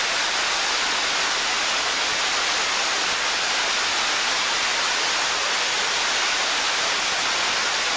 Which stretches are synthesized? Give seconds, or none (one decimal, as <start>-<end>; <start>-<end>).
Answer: none